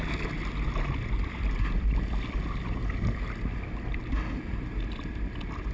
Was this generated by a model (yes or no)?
no